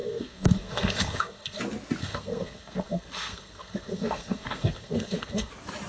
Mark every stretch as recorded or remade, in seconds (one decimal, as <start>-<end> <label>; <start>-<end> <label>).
0.0-1.6 remade; 1.6-2.0 recorded; 2.0-5.5 remade; 5.5-5.9 recorded